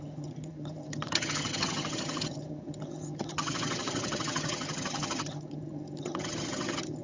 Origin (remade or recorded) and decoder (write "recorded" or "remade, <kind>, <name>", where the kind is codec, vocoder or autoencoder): remade, vocoder, HiFi-GAN